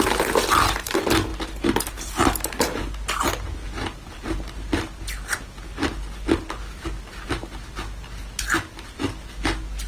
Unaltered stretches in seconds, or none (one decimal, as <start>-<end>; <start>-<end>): 0.0-9.9